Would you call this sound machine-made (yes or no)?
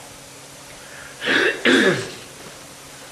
no